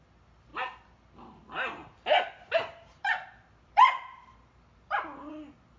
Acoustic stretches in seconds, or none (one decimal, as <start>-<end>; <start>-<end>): 0.0-5.8

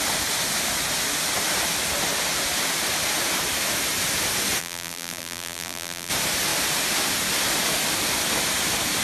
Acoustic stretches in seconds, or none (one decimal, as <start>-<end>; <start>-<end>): 0.0-4.6; 6.1-9.0

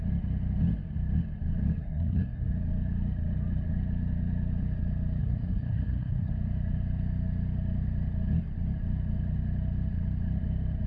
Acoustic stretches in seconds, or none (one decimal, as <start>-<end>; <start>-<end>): 0.0-1.8; 2.5-5.2; 6.3-10.9

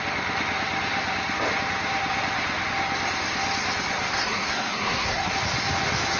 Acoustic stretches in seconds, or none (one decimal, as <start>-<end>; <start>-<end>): 0.0-4.1; 5.3-6.2

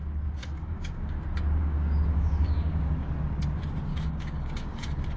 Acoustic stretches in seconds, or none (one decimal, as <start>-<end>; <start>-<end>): 0.0-0.4; 1.2-1.6; 2.9-3.9; 4.8-5.2

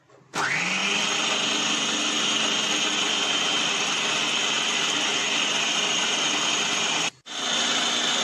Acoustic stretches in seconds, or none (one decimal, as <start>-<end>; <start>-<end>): 0.0-8.2